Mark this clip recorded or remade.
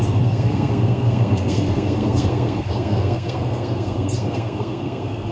remade